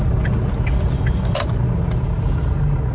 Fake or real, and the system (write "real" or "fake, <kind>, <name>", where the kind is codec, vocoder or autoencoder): real